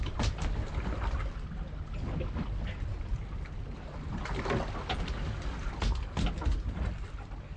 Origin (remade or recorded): recorded